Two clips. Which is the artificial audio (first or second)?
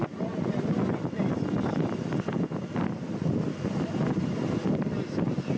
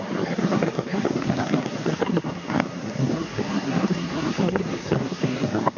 second